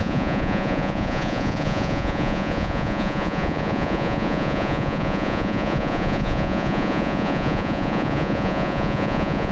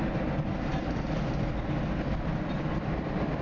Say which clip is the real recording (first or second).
second